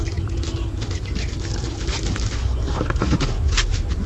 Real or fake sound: real